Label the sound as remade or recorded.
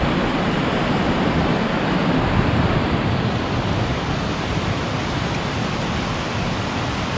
recorded